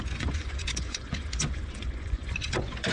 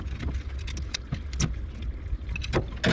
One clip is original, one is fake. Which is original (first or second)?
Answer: second